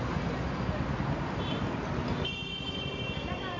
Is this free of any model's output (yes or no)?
yes